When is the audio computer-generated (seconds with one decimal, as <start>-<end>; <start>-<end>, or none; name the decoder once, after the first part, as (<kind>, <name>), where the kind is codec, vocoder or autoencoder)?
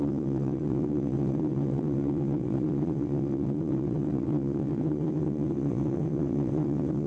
0.0-7.1 (vocoder, WaveNeXt)